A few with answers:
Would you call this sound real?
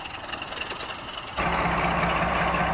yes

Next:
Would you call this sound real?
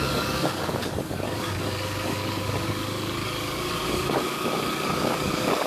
no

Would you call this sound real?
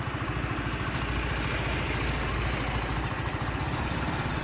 yes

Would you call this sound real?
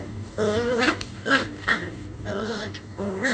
no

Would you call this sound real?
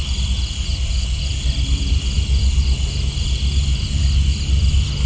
yes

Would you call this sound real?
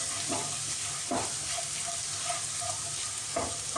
yes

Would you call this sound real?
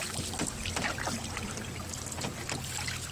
yes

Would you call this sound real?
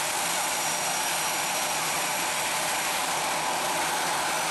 yes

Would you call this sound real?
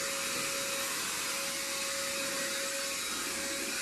yes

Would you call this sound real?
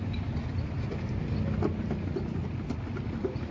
yes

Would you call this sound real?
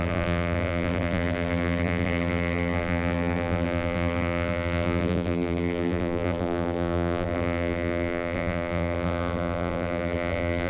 no